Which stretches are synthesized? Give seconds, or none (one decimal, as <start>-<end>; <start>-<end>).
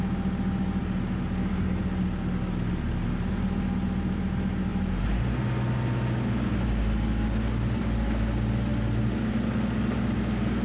none